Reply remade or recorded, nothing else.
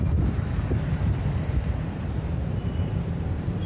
remade